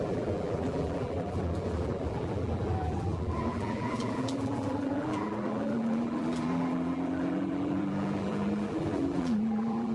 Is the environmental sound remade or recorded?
remade